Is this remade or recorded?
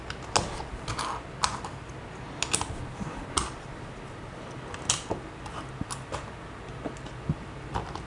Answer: recorded